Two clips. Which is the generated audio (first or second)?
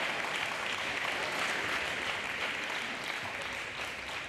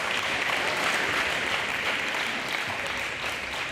second